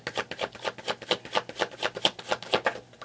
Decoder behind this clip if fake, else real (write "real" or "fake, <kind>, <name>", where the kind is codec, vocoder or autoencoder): real